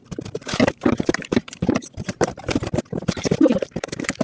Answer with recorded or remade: remade